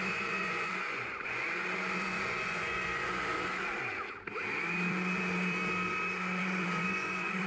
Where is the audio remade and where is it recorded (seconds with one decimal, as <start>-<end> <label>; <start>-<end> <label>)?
0.0-3.3 remade; 3.3-6.4 recorded; 6.4-7.5 remade